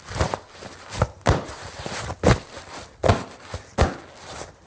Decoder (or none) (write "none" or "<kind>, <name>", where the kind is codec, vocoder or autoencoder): none